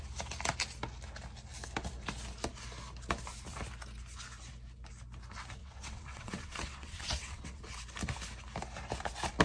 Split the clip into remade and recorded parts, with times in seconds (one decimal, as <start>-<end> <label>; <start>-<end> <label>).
0.0-5.6 recorded; 5.6-7.6 remade; 7.6-9.4 recorded